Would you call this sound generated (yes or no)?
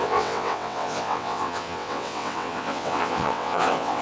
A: yes